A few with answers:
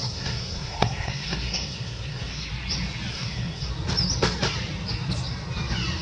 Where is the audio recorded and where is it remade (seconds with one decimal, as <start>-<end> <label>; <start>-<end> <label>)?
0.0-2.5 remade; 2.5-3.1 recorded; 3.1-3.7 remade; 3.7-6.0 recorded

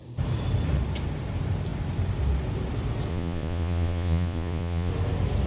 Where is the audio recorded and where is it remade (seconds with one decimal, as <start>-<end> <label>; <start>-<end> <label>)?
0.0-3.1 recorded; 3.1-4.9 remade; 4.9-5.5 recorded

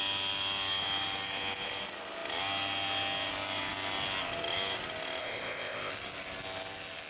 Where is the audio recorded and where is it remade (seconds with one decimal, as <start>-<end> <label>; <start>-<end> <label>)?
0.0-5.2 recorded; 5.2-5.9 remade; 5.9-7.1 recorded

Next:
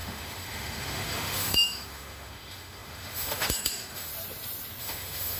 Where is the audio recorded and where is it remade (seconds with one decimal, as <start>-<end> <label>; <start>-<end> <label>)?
0.0-4.1 remade; 4.1-4.8 recorded; 4.8-5.4 remade

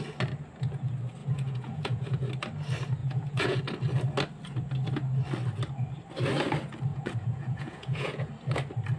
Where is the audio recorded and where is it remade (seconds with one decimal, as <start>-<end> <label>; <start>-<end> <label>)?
0.0-1.2 recorded; 1.2-2.3 remade; 2.3-3.0 recorded; 3.0-3.6 remade; 3.6-6.9 recorded; 6.9-8.3 remade; 8.3-9.0 recorded